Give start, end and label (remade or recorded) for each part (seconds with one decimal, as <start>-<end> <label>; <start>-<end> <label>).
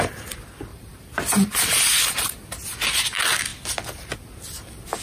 0.0-0.7 recorded; 0.7-2.3 remade; 2.3-5.0 recorded